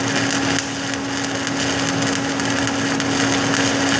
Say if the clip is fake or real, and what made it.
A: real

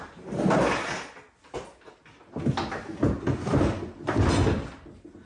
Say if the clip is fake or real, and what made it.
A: real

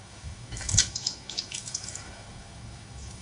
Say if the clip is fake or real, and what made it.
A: fake, autoencoder, DAC-VAE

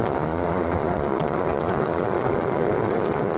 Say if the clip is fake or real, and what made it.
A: fake, vocoder, Vocos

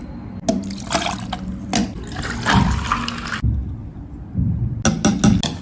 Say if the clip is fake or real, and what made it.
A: real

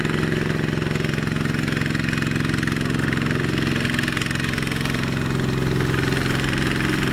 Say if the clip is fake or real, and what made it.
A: real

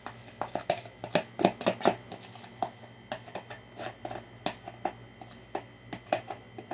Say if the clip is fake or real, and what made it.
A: real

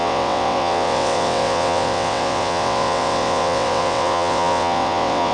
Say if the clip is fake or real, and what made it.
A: fake, vocoder, WaveNeXt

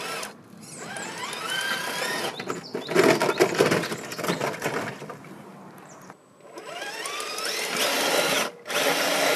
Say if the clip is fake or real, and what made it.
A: real